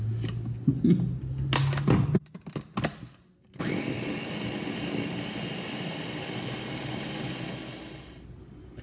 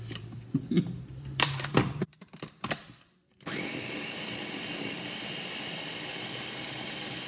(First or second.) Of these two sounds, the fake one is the second